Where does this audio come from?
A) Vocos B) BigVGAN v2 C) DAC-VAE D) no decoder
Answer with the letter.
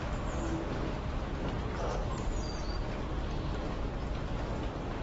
D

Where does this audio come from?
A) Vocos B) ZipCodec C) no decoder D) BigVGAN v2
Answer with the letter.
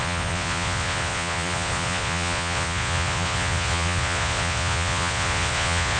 A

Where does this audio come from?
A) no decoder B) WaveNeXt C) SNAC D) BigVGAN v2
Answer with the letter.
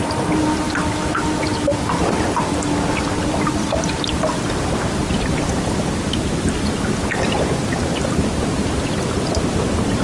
A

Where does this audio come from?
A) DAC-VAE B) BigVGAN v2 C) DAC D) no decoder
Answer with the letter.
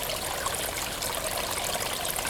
D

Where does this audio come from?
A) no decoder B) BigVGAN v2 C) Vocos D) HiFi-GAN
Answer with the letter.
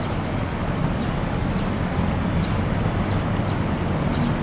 A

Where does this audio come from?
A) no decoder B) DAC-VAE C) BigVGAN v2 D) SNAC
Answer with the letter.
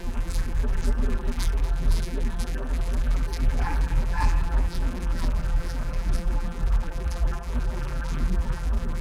C